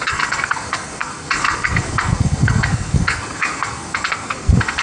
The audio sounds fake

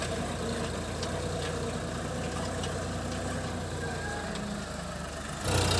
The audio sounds real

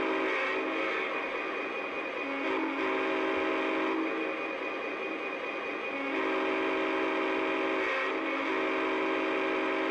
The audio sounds real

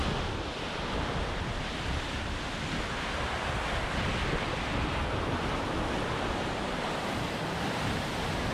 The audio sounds real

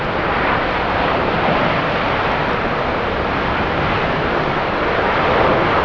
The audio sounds real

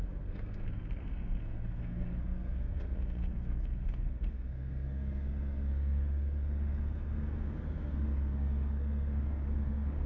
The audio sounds fake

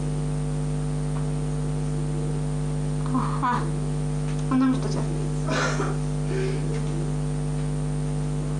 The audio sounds real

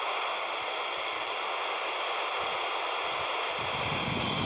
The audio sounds real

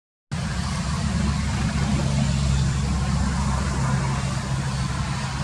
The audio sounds real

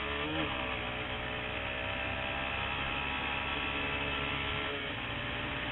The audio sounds real